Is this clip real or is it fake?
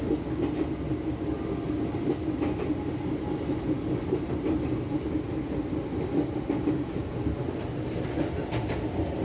real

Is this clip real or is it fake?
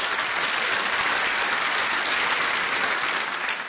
real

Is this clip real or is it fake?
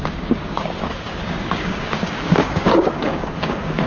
fake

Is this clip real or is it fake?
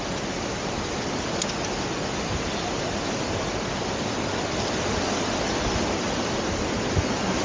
real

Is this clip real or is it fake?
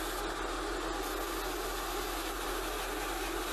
real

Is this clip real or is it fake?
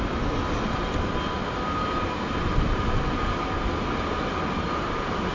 real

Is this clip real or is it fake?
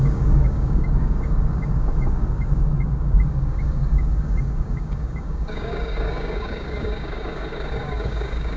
fake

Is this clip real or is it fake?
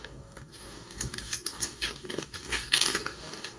fake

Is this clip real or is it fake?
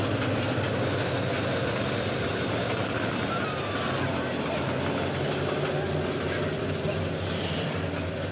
real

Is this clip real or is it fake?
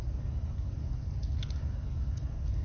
real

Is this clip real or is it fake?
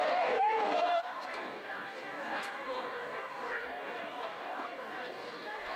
fake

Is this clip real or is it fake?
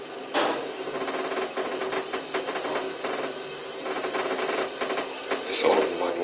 real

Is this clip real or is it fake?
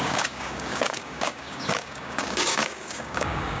fake